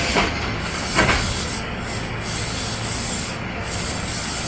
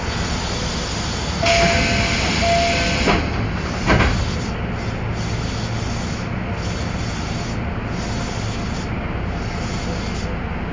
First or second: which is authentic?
second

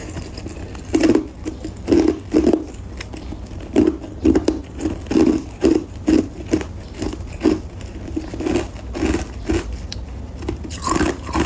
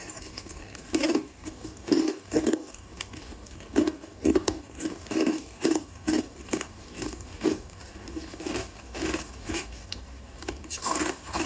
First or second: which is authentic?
first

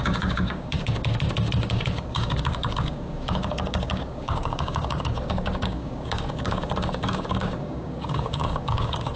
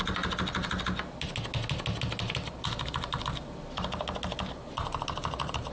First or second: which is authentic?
second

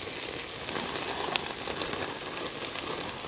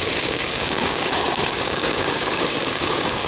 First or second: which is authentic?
first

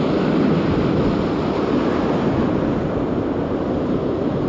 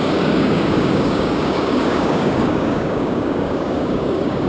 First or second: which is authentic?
first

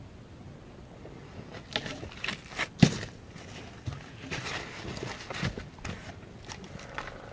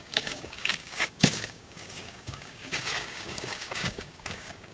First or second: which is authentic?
first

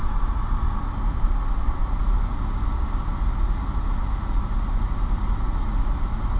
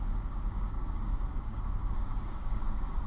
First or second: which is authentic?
first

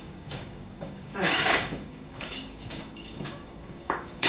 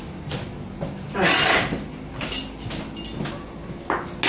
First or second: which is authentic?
second